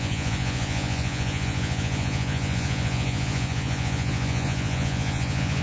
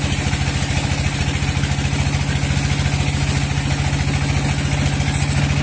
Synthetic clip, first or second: first